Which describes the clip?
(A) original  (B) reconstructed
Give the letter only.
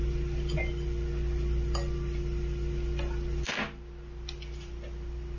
A